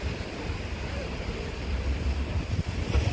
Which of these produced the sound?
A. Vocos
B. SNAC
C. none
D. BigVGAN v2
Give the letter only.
D